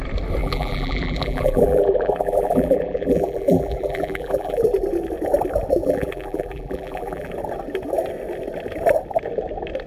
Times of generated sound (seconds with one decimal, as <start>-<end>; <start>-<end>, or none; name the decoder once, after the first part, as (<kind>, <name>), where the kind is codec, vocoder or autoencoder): 0.4-4.6 (vocoder, BigVGAN v2); 5.8-7.3